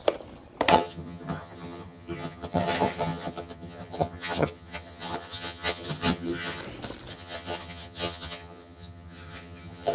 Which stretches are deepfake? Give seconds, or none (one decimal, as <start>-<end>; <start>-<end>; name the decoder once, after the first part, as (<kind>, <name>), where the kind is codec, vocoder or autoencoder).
0.7-6.6 (vocoder, HiFi-GAN); 7.1-9.9